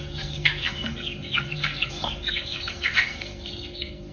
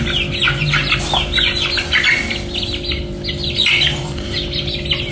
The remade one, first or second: first